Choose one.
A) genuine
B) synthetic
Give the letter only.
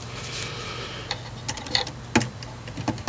A